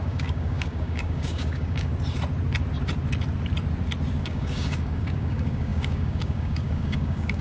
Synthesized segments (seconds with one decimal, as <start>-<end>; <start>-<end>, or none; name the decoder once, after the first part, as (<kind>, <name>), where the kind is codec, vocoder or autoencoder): 0.0-1.9 (codec, DAC); 4.2-7.4